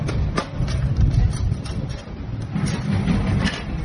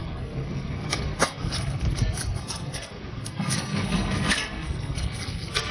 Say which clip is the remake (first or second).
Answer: second